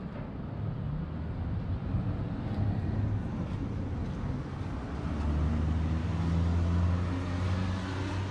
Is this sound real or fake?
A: real